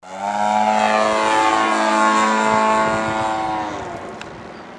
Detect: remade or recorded recorded